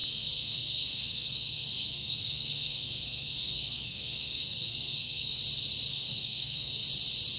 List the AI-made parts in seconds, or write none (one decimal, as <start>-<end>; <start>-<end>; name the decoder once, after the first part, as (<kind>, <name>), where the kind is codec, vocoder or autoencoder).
0.0-5.4 (codec, SNAC); 5.9-6.8